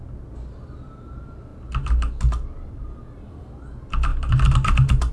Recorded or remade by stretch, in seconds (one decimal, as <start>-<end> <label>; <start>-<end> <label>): 0.0-5.1 recorded